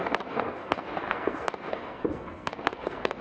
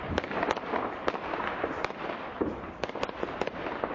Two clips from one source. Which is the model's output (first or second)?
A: first